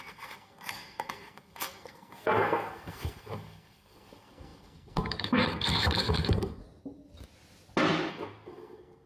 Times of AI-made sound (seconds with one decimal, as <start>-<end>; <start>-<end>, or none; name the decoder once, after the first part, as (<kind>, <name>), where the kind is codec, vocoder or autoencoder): 0.0-6.6 (codec, SNAC); 8.1-9.1